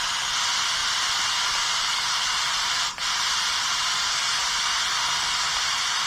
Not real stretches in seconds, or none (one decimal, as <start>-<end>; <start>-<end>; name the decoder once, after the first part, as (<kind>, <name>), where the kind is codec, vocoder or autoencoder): none